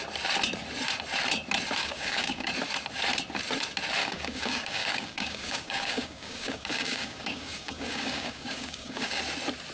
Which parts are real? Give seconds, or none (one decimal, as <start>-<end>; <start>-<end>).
0.0-1.8; 2.5-4.0; 9.2-9.7